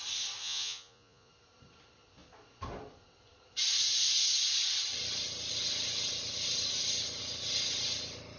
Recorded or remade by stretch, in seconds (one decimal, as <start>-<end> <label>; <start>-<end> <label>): 0.0-0.4 recorded; 0.4-1.3 remade; 1.3-8.4 recorded